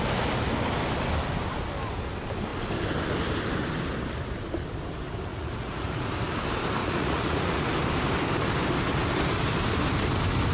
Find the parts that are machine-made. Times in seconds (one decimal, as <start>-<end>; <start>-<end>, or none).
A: 5.3-6.1; 6.8-7.7